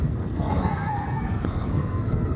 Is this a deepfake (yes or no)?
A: yes